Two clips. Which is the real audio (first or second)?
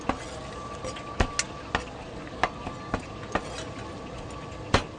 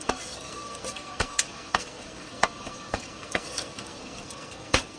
first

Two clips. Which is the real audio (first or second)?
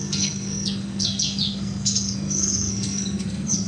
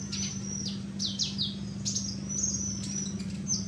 second